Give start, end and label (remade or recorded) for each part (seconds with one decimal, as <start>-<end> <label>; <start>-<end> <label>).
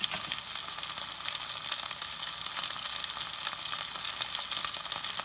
0.0-5.2 recorded